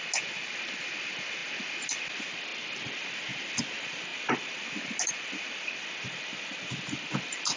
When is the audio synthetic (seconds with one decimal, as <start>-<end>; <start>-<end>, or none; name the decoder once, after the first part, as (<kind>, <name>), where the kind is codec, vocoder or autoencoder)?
none